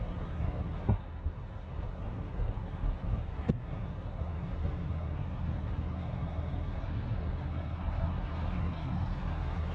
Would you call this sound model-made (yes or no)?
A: yes